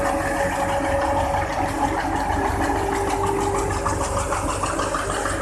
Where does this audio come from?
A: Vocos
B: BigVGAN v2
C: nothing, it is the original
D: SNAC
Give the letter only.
C